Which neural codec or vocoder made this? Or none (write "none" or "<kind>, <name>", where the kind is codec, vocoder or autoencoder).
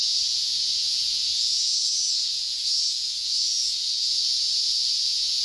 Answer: vocoder, Vocos